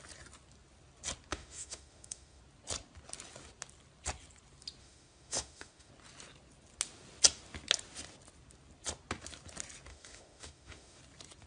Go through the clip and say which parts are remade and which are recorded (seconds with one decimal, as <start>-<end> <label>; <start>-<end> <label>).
0.0-1.3 recorded; 1.3-2.4 remade; 2.4-4.8 recorded; 4.8-5.9 remade; 5.9-9.9 recorded; 9.9-11.0 remade; 11.0-11.5 recorded